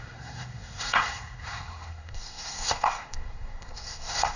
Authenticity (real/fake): fake